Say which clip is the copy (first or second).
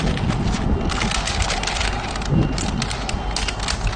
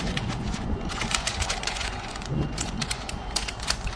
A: second